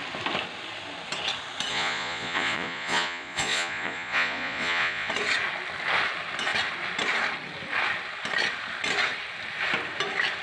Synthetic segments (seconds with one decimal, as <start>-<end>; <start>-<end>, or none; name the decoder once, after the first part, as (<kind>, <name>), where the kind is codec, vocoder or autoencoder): 1.7-5.1 (vocoder, Vocos)